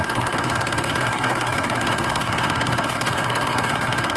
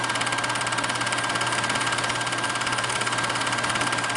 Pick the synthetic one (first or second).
first